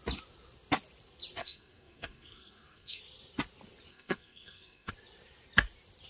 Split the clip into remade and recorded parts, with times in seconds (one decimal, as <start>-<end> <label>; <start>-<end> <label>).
0.0-1.4 recorded; 1.4-3.0 remade; 3.0-3.9 recorded; 3.9-4.9 remade; 4.9-6.1 recorded